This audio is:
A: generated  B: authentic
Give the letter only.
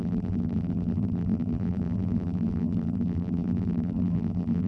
A